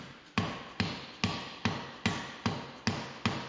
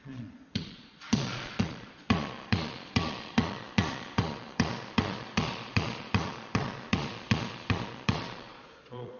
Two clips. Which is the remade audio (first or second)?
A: second